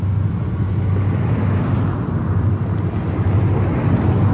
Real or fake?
real